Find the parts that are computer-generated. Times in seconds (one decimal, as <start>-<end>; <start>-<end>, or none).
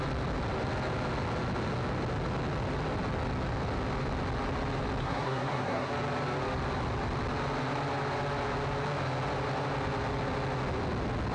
5.0-5.9